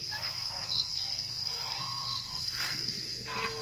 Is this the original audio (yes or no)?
no